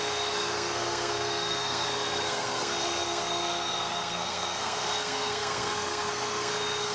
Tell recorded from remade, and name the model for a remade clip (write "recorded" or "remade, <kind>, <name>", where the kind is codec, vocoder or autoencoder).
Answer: remade, codec, SNAC